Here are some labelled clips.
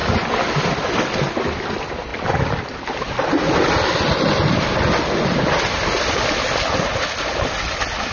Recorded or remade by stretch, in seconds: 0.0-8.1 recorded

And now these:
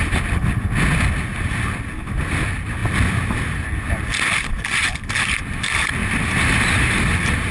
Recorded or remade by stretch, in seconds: 0.0-6.0 recorded; 6.0-7.0 remade; 7.0-7.5 recorded

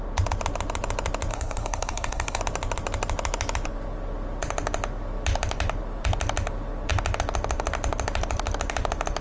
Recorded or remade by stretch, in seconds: 0.0-1.3 recorded; 1.3-2.4 remade; 2.4-9.2 recorded